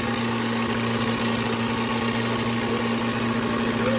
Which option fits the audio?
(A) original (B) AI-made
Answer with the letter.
A